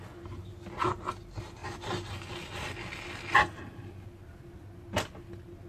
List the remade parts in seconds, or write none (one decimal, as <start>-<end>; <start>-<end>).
none